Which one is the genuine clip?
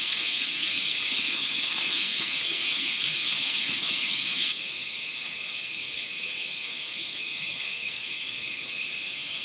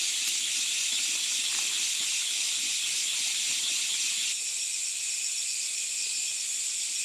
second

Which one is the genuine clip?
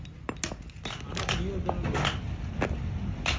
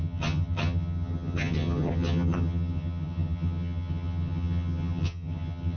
first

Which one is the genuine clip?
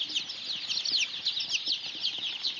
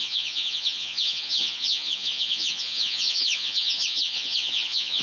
first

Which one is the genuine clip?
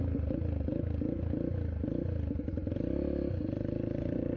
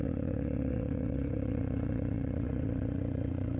first